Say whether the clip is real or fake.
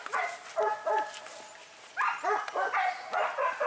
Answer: real